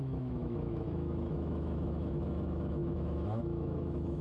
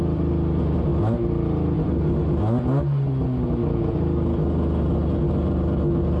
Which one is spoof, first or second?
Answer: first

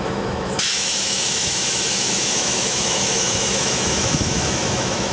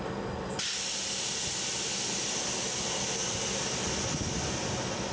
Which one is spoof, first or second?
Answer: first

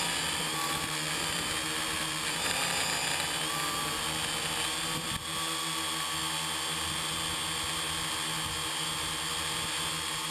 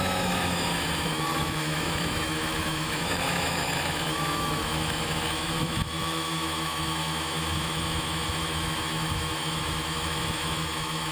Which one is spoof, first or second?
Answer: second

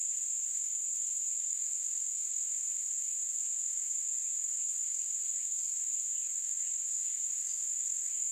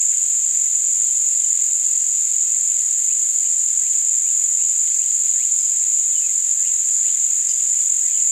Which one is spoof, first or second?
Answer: first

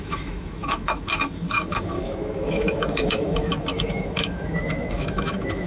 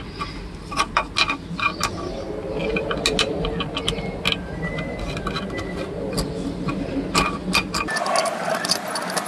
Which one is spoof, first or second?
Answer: first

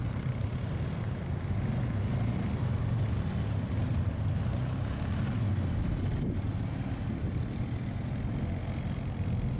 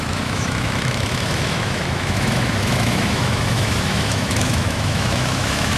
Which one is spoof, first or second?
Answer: second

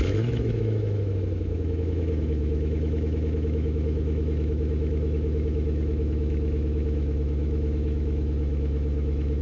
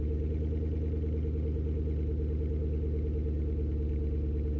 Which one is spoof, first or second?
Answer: first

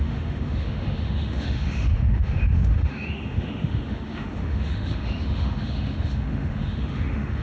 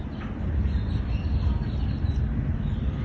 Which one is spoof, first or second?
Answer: first